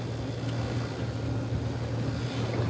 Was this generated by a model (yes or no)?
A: no